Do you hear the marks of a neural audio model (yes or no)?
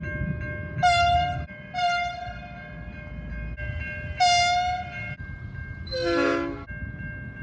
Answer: no